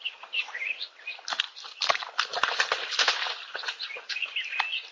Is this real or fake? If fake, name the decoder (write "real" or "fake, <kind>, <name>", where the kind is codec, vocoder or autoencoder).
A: real